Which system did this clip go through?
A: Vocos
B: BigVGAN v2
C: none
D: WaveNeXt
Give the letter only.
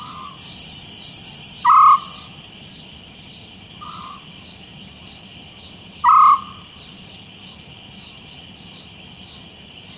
C